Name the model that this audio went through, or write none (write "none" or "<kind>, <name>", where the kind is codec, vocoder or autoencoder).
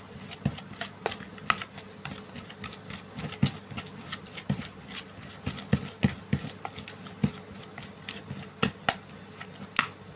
none